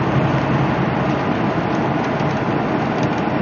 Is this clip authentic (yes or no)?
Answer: yes